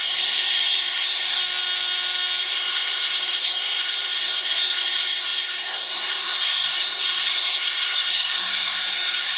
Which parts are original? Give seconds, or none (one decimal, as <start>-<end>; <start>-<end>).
1.4-2.4